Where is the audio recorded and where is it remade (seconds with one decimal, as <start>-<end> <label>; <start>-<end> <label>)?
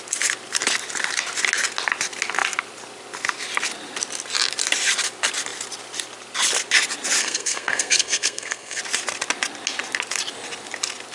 0.0-7.2 recorded; 7.2-8.8 remade; 8.8-11.1 recorded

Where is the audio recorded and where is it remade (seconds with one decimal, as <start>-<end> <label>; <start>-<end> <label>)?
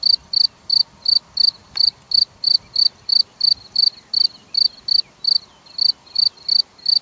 0.0-1.6 recorded; 1.6-2.8 remade; 2.8-7.0 recorded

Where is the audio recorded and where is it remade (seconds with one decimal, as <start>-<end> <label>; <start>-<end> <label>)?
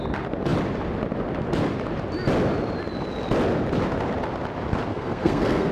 0.0-4.9 recorded; 4.9-5.7 remade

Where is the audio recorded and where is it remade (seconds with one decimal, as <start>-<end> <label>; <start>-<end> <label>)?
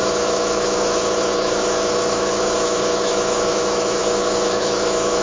0.0-5.2 remade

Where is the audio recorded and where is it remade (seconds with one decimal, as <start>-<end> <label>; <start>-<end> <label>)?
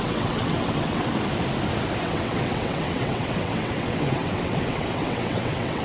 0.0-1.0 remade; 1.0-2.0 recorded; 2.0-5.8 remade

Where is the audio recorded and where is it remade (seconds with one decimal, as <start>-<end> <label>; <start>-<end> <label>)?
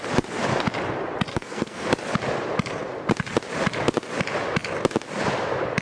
0.0-1.3 recorded; 1.3-1.9 remade; 1.9-5.8 recorded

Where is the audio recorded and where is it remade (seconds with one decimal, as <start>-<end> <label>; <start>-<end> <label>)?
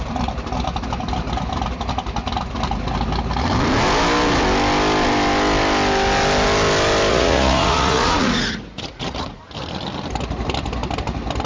0.0-7.1 recorded; 7.1-9.4 remade; 9.4-11.5 recorded